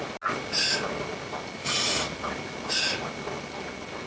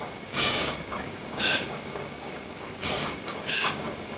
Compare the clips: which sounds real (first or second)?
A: first